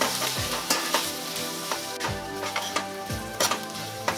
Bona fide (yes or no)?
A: no